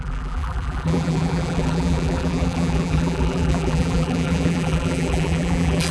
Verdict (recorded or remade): remade